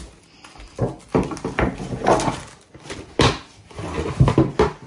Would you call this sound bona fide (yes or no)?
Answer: yes